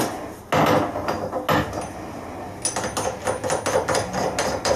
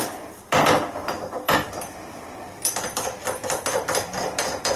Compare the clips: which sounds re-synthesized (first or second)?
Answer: second